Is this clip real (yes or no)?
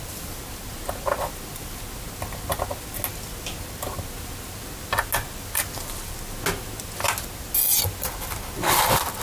yes